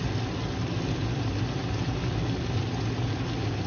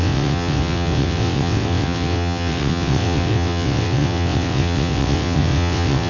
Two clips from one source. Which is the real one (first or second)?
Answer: first